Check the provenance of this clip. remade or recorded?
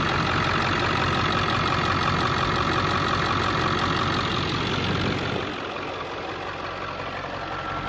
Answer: recorded